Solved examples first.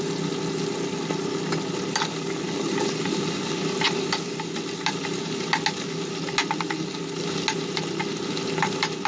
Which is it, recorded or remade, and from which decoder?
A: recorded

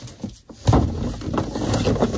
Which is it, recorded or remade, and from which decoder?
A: recorded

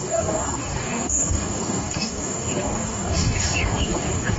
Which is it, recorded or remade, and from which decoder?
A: remade, codec, DAC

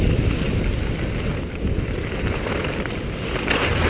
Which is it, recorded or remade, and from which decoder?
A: recorded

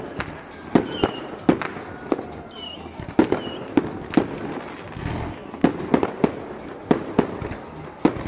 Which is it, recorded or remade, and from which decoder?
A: recorded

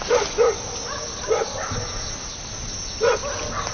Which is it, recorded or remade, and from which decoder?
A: recorded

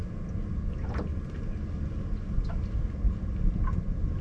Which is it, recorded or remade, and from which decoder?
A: recorded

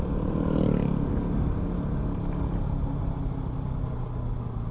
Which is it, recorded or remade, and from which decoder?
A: recorded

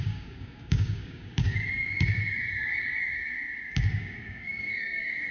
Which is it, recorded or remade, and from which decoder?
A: remade, codec, DAC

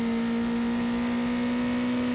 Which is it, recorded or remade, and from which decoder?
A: recorded